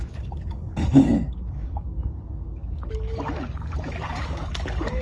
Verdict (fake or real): fake